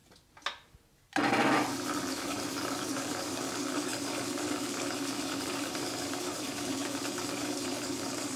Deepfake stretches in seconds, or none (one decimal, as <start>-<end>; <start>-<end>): 2.1-8.4